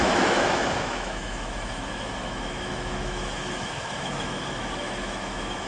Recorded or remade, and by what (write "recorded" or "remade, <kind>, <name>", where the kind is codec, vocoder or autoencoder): remade, autoencoder, DAC-VAE